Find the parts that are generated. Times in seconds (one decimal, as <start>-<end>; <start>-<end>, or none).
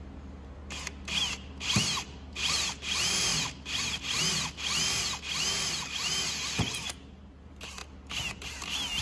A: 0.0-0.6; 1.3-3.3; 5.5-7.8; 8.3-9.0